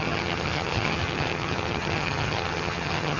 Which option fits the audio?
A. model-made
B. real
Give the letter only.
A